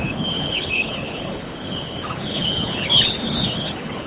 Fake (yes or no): yes